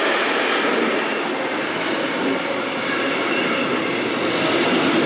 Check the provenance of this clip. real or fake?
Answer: real